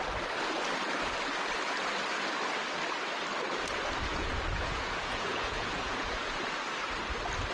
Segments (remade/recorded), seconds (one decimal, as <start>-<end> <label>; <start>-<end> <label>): 0.0-4.1 recorded; 4.1-6.4 remade; 6.4-7.5 recorded